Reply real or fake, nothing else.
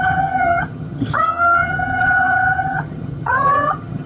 fake